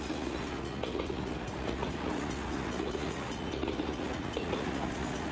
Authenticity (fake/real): fake